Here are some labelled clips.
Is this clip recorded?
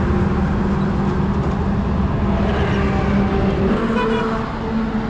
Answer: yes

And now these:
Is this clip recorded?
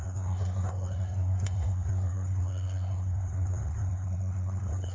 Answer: no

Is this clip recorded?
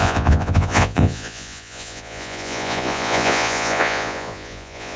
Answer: no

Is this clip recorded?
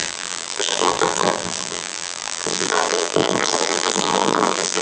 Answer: no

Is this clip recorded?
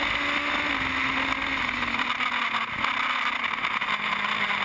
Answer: yes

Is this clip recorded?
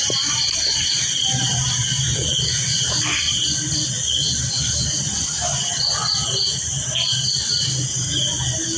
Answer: yes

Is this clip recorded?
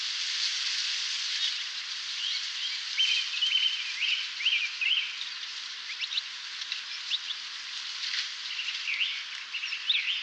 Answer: yes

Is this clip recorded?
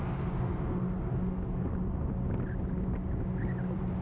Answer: yes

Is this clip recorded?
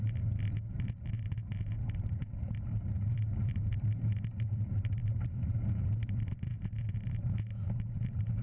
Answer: no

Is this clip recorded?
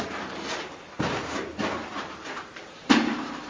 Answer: no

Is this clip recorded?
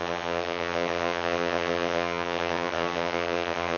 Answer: no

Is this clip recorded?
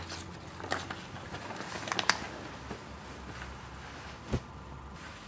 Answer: yes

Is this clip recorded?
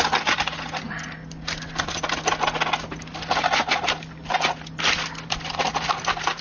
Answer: yes